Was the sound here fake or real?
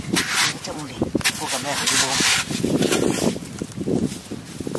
real